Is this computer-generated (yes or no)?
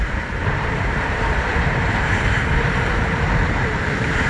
yes